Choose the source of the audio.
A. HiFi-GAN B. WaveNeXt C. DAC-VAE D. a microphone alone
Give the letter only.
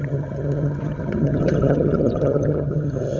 A